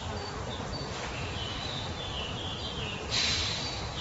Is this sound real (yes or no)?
yes